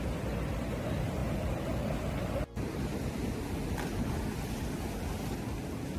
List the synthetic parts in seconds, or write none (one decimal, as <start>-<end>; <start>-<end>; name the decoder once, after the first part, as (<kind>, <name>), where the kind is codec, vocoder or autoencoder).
1.2-4.7 (vocoder, BigVGAN v2)